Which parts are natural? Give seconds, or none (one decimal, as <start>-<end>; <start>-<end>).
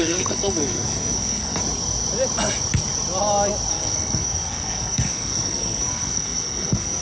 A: 1.6-3.7